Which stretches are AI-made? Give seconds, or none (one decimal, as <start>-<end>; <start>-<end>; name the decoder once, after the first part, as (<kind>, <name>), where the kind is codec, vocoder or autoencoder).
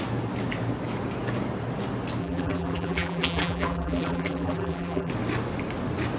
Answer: 2.2-5.1 (vocoder, BigVGAN v2)